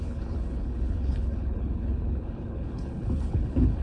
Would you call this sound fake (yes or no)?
yes